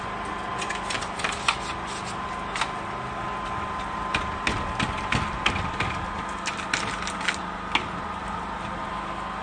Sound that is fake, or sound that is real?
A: real